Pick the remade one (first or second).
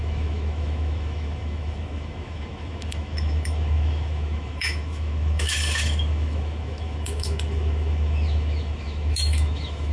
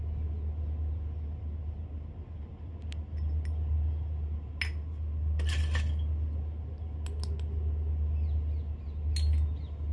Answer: first